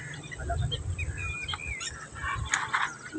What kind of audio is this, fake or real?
real